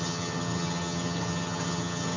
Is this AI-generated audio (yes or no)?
yes